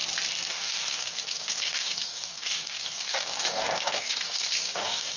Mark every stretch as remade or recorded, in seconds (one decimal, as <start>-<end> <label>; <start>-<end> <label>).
0.0-0.5 recorded; 0.5-5.2 remade